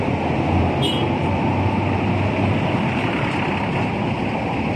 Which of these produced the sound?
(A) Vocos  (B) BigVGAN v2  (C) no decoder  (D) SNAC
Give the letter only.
C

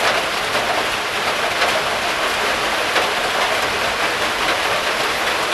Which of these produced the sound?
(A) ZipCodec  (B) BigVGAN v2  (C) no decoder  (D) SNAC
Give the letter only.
C